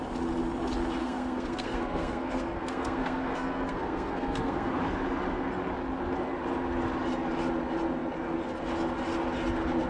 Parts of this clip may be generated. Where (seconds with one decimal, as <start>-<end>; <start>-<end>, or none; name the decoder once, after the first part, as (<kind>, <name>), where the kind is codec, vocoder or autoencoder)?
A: 1.0-4.7 (codec, SNAC)